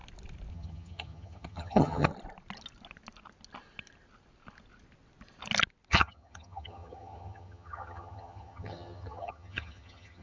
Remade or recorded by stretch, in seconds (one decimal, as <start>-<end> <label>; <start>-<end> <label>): 0.0-0.5 recorded; 0.5-2.1 remade; 2.1-5.9 recorded; 5.9-10.2 remade